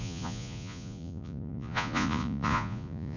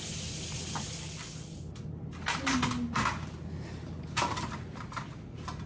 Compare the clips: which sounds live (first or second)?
second